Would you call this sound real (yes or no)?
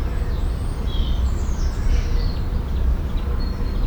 yes